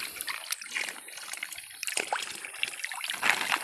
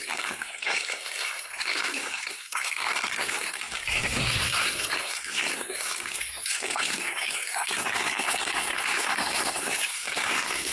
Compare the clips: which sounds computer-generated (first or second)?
second